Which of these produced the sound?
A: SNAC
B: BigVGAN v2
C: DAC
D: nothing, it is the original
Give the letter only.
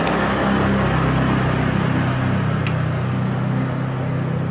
D